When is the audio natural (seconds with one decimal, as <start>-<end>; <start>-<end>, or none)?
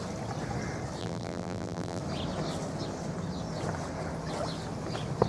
0.0-1.0; 2.0-5.3